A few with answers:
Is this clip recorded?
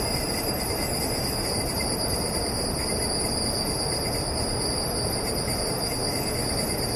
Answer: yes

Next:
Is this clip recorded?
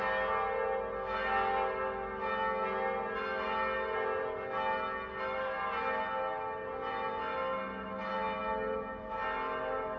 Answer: yes